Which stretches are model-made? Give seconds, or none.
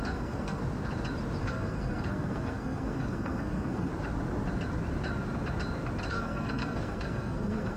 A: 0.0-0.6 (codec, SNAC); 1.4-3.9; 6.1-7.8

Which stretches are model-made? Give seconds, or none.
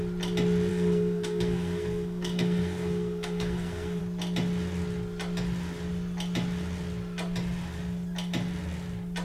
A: 0.7-4.0 (codec, SNAC)